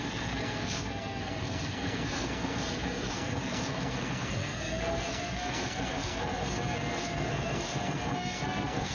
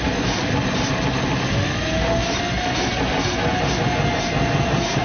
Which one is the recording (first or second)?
second